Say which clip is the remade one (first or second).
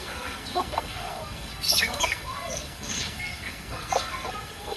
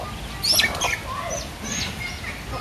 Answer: first